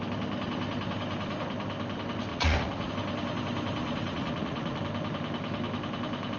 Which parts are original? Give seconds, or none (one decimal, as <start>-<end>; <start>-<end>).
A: 0.0-2.3; 2.9-3.8; 4.8-6.4

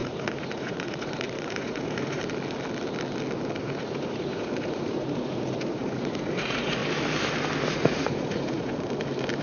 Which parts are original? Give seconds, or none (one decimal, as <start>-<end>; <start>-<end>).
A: 2.2-3.6; 6.8-7.7; 8.7-9.4